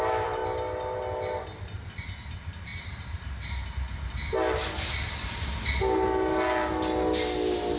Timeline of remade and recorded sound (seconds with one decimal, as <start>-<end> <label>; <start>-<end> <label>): 0.0-0.4 remade; 0.4-2.0 recorded; 2.0-2.7 remade; 2.7-7.8 recorded